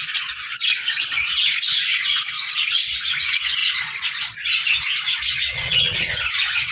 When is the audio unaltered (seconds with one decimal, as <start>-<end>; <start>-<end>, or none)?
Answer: none